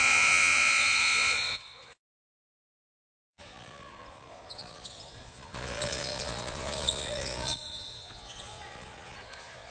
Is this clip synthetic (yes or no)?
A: yes